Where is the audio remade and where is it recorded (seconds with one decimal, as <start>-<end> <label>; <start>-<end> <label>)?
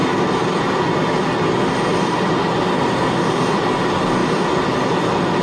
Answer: 0.0-5.4 recorded